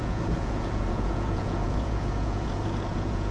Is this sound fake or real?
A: fake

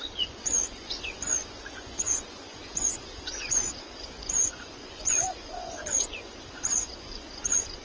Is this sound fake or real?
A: fake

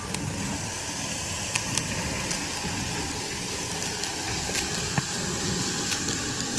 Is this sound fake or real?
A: real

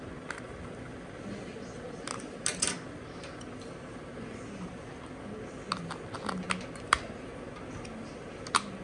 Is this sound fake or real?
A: real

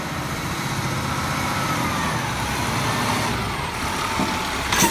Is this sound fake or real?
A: real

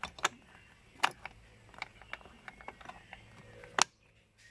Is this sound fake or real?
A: real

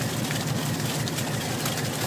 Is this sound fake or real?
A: real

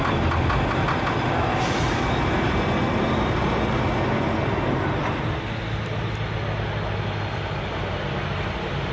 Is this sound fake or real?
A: real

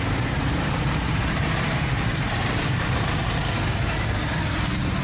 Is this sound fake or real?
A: fake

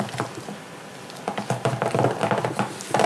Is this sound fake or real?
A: real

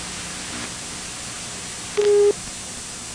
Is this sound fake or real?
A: real